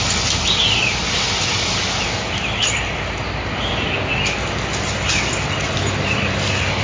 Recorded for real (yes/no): yes